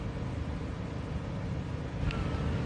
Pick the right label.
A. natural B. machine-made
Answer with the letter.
A